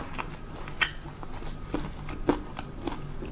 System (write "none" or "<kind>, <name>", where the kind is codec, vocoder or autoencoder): none